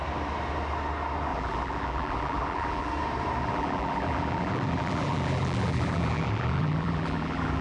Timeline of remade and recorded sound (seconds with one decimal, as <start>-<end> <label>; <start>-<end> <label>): 0.0-1.3 recorded; 1.3-2.9 remade; 2.9-3.4 recorded; 3.4-7.6 remade